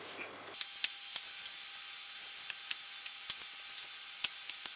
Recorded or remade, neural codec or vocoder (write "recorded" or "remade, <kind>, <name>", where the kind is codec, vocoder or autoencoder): recorded